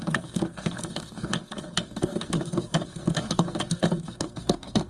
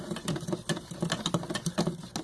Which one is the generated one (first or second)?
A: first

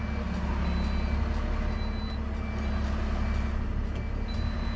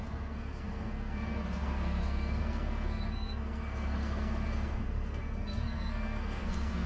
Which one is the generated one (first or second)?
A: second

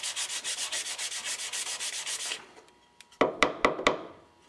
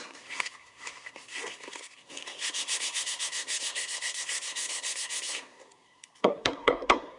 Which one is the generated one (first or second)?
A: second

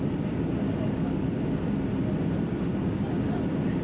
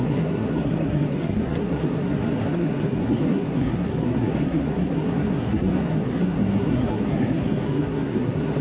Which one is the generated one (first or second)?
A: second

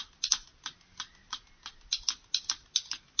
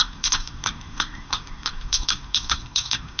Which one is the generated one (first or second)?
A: second